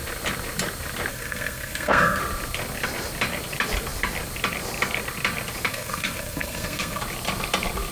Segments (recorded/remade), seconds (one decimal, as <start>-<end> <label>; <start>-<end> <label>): 0.0-1.1 recorded; 1.1-2.2 remade; 2.2-5.7 recorded; 5.7-7.0 remade; 7.0-7.9 recorded